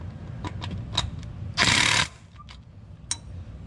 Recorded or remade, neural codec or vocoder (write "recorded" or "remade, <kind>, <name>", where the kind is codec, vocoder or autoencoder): recorded